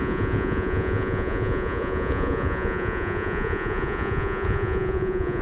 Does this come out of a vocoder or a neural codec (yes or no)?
yes